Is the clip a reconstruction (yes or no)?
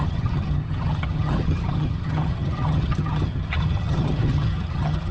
yes